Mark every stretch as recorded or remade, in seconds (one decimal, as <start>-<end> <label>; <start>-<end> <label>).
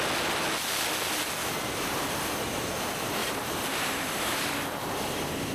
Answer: 0.0-1.4 recorded; 1.4-2.4 remade; 2.4-3.2 recorded; 3.2-4.1 remade; 4.1-5.5 recorded